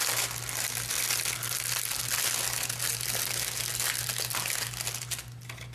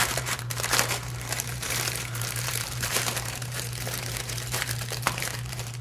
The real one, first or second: first